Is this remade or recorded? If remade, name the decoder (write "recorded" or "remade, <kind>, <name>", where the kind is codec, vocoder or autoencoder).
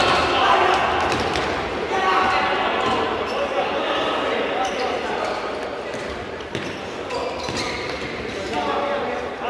recorded